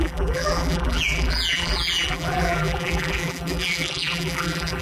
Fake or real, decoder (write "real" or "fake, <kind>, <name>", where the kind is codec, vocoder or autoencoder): fake, vocoder, BigVGAN v2